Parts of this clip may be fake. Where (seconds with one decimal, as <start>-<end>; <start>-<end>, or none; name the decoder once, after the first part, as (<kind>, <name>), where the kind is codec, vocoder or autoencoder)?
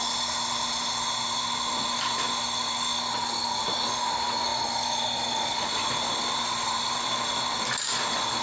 4.5-7.1 (vocoder, BigVGAN v2)